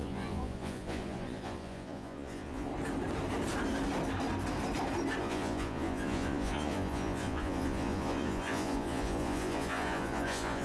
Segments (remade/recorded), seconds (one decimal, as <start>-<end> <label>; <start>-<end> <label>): 0.0-2.7 remade; 2.7-5.2 recorded; 5.2-10.6 remade